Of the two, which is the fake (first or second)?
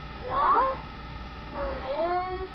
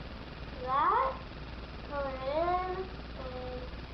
first